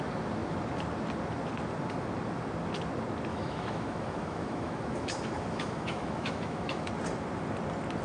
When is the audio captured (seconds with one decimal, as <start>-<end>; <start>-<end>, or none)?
0.0-3.3; 6.9-8.0